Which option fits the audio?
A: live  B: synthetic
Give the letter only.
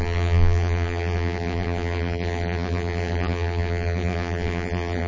B